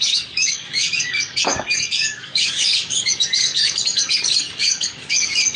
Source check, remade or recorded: remade